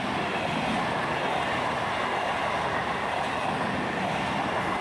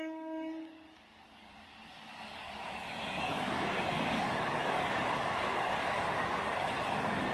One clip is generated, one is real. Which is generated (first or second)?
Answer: second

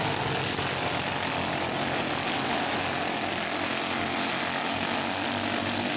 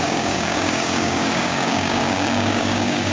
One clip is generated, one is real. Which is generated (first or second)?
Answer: second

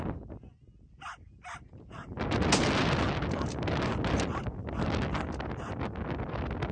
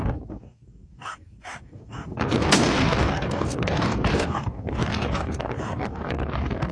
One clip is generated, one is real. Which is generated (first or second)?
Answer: second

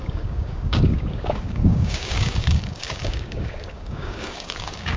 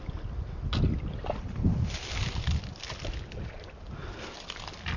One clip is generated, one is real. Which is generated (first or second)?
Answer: first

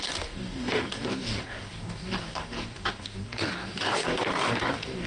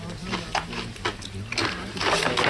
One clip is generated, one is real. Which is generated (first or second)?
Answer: first